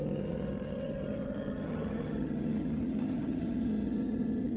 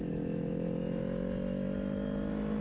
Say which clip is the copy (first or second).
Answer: first